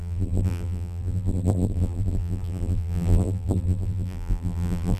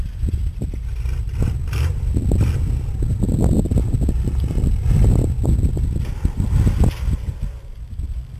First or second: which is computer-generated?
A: first